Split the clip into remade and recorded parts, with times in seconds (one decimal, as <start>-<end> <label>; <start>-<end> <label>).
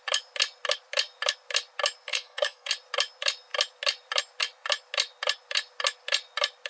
0.0-2.1 recorded; 2.1-2.7 remade; 2.7-6.7 recorded